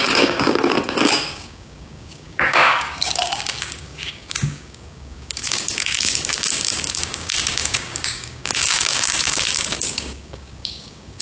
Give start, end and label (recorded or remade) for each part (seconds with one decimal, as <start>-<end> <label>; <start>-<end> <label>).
0.0-11.2 remade